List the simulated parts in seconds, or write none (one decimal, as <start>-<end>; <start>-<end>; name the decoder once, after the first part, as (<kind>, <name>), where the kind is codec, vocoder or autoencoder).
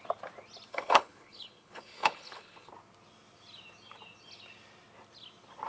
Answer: 0.7-2.7 (codec, HILCodec)